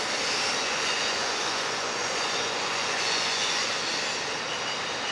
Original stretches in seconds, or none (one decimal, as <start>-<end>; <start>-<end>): 0.0-0.6; 3.7-5.1